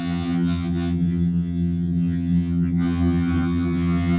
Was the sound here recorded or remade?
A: remade